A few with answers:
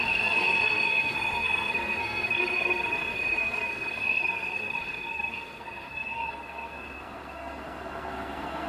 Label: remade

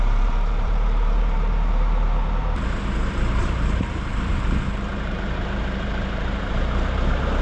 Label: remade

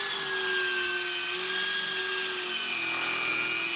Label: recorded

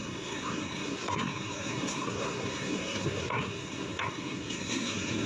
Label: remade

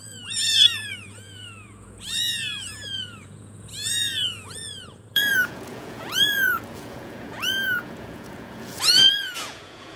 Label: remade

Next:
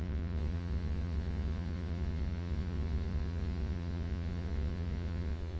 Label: remade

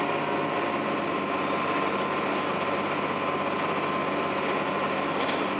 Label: recorded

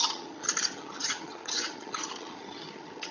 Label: remade